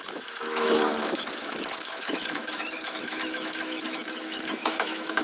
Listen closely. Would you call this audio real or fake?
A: fake